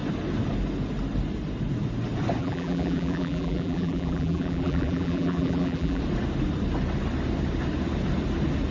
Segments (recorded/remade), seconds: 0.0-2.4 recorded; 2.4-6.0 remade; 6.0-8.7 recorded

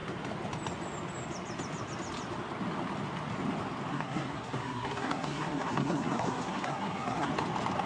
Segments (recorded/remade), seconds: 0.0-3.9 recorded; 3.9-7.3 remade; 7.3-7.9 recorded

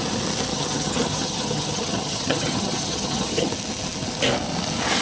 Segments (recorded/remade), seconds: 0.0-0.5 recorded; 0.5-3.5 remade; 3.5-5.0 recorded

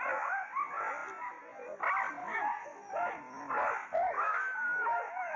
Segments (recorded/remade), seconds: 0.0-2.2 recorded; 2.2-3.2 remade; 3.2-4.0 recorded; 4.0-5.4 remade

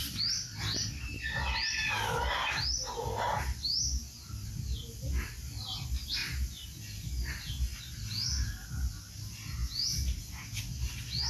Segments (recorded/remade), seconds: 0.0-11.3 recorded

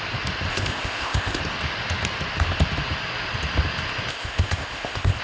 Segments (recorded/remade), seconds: 0.0-0.5 recorded; 0.5-1.4 remade; 1.4-4.1 recorded; 4.1-5.2 remade

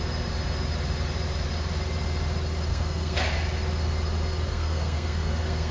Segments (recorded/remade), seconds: 0.0-2.7 recorded; 2.7-3.3 remade; 3.3-4.5 recorded; 4.5-5.7 remade

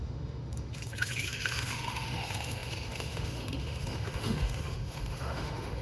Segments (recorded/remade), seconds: 0.0-5.8 remade